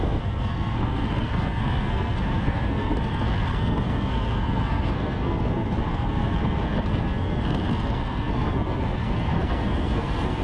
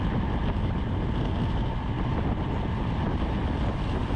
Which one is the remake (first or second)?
first